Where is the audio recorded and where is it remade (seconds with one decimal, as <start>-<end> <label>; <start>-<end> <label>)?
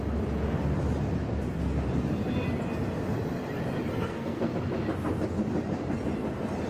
0.0-3.9 recorded; 3.9-4.5 remade; 4.5-6.7 recorded